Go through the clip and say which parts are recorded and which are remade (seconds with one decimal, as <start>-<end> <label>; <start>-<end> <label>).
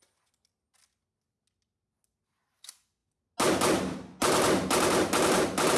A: 0.0-5.8 recorded